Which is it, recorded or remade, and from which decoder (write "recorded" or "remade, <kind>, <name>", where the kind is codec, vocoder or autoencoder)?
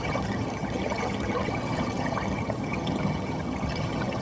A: remade, vocoder, HiFi-GAN